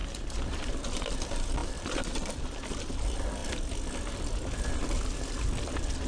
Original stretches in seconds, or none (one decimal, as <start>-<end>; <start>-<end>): 0.0-1.6; 2.9-6.1